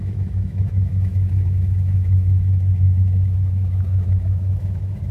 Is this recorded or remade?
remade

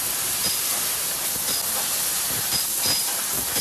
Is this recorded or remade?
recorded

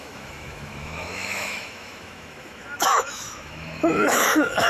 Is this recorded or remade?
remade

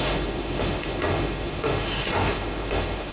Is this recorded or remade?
remade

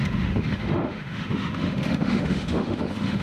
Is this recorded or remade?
remade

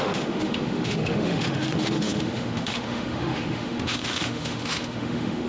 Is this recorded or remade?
remade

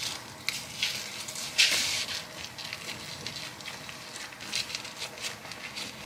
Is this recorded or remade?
recorded